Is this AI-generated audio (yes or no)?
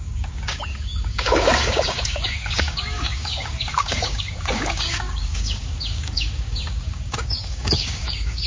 yes